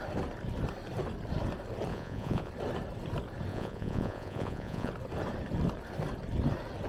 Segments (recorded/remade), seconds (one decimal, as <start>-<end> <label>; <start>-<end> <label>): 0.0-1.9 recorded; 1.9-2.5 remade; 2.5-3.5 recorded; 3.5-4.9 remade; 4.9-6.9 recorded